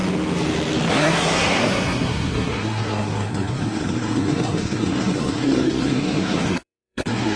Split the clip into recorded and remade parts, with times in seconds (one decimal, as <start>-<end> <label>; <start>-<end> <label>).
0.0-0.9 recorded; 0.9-7.4 remade